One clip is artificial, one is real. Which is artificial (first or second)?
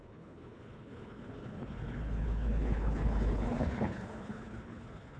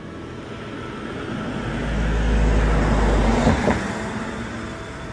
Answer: first